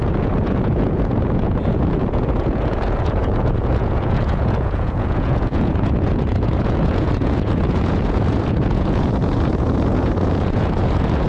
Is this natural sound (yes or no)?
no